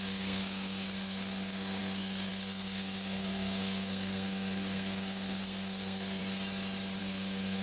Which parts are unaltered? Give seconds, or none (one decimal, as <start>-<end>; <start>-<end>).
6.2-7.0

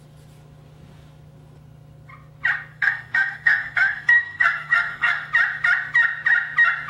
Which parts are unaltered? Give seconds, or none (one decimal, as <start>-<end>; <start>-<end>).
0.0-2.7; 5.3-6.9